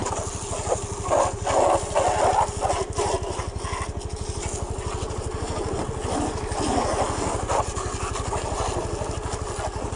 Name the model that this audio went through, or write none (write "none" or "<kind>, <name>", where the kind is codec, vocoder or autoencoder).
none